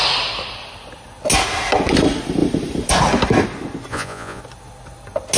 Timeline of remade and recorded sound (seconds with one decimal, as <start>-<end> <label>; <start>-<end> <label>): 0.0-3.9 recorded; 3.9-4.4 remade; 4.4-5.4 recorded